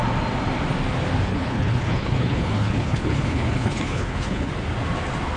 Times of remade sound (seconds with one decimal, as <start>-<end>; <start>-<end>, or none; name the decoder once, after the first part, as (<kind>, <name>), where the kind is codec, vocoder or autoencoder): 1.3-4.5 (codec, HILCodec)